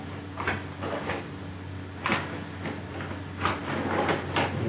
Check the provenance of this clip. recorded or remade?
recorded